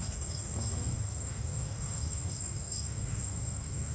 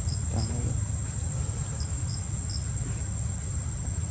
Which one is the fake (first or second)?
first